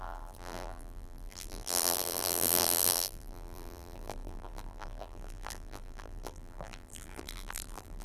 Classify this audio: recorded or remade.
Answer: remade